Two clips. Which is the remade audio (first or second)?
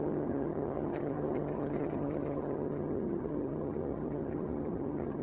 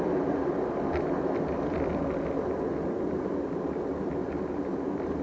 first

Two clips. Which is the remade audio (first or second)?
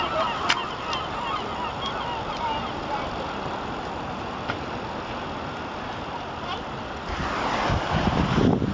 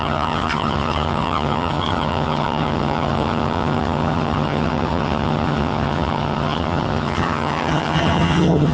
second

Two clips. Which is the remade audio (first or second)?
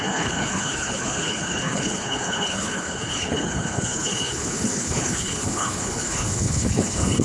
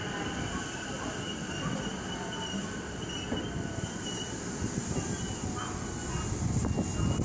first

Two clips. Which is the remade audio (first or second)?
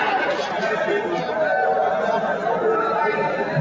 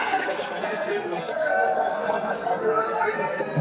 second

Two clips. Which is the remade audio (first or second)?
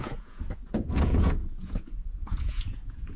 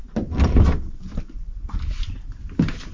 first